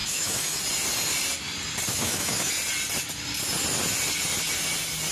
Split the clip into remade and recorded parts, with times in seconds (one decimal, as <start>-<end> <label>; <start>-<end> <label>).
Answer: 0.0-0.6 remade; 0.6-1.9 recorded; 1.9-2.5 remade; 2.5-5.1 recorded